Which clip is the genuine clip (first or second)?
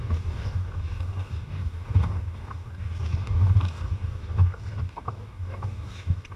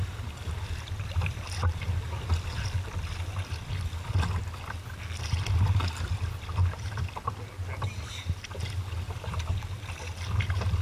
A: second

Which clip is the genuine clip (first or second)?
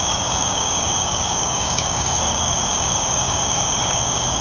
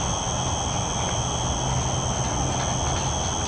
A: second